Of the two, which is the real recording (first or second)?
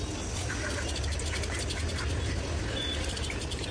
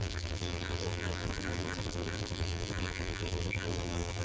first